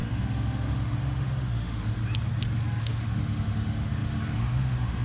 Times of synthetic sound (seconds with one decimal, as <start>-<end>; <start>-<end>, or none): 0.0-2.0; 2.8-5.0